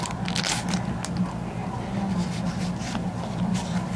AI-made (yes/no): no